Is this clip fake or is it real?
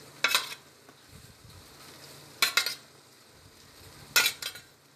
real